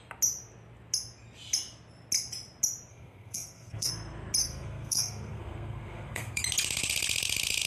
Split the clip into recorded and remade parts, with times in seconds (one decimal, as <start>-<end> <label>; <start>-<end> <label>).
0.0-2.9 recorded; 2.9-3.9 remade; 3.9-4.4 recorded; 4.4-6.4 remade; 6.4-7.7 recorded